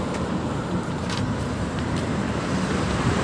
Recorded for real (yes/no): no